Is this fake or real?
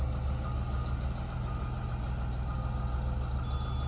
real